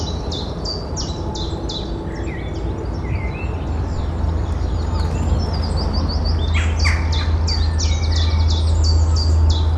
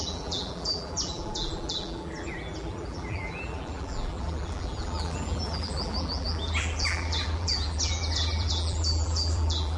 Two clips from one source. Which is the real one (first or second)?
first